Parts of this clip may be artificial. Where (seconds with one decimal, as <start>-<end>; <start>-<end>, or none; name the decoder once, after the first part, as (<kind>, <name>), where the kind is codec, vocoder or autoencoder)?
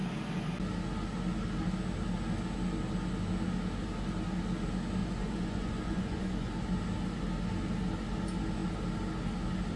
5.0-6.5 (vocoder, Vocos)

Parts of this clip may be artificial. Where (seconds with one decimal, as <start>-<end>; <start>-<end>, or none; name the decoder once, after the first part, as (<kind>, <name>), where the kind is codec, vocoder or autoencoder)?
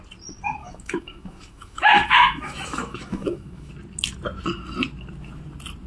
0.6-3.7 (autoencoder, DAC-VAE)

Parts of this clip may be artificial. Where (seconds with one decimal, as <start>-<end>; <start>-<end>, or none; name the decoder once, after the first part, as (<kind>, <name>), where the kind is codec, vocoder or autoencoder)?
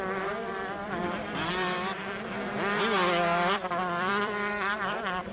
0.0-2.0 (vocoder, BigVGAN v2); 3.8-5.3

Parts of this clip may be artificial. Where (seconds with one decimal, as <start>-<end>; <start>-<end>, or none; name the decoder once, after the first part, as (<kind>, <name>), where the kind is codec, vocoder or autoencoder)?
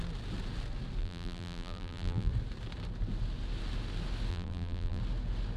1.0-2.3 (vocoder, BigVGAN v2); 4.3-5.0